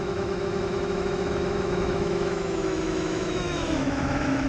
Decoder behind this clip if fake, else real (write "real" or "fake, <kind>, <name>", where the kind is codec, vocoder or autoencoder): fake, autoencoder, DAC-VAE